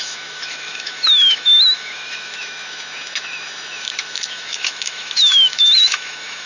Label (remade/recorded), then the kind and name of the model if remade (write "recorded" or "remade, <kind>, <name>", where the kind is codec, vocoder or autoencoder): remade, autoencoder, DAC-VAE